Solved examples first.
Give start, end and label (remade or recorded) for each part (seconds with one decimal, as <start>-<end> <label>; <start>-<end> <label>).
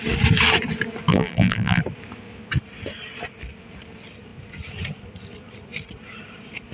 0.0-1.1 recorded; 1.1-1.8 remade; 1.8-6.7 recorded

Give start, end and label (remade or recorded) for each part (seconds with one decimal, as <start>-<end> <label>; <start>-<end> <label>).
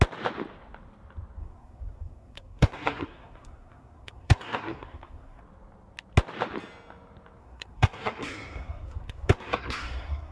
0.0-1.4 recorded; 1.4-5.4 remade; 5.4-7.4 recorded; 7.4-10.3 remade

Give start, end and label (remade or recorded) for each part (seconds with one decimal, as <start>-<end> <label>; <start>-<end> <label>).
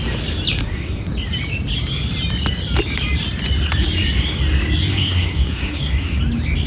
0.0-0.6 recorded; 0.6-1.1 remade; 1.1-4.9 recorded; 4.9-6.2 remade; 6.2-6.7 recorded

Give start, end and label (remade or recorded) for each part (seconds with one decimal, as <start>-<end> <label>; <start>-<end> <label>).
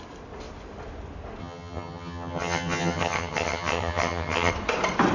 0.0-1.4 recorded; 1.4-4.5 remade; 4.5-5.1 recorded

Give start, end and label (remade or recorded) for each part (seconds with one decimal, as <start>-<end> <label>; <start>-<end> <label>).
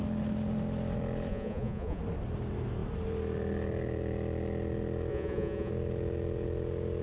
0.0-1.3 recorded; 1.3-2.0 remade; 2.0-5.1 recorded; 5.1-5.7 remade; 5.7-7.0 recorded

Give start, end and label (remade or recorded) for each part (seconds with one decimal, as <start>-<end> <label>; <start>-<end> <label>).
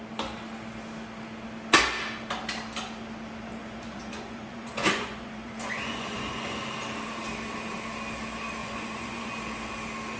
0.0-3.6 recorded; 3.6-6.6 remade; 6.6-8.6 recorded; 8.6-9.3 remade; 9.3-10.2 recorded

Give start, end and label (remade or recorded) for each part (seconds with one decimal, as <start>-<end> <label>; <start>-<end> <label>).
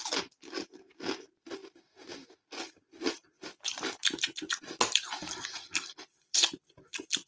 0.0-3.2 recorded; 3.2-7.3 remade